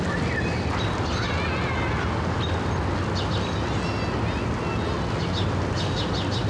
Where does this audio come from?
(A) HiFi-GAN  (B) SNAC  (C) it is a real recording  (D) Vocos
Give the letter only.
C